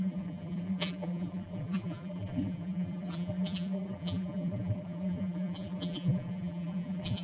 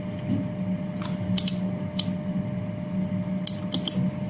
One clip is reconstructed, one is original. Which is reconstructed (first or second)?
first